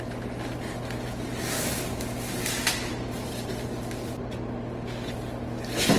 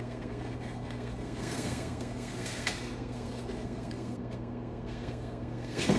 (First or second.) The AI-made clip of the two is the second